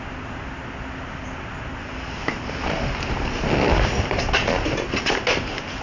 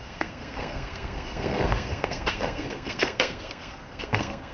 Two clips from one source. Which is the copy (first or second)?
second